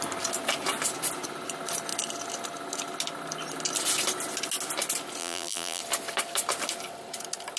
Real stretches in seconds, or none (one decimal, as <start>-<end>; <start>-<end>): 0.0-5.2; 5.8-7.6